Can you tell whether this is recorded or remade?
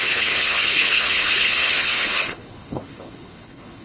remade